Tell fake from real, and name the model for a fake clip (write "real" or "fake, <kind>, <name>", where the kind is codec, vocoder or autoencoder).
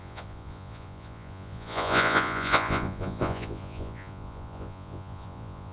fake, vocoder, Vocos